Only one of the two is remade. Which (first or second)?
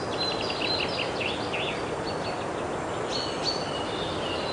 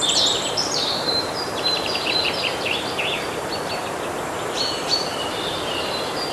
second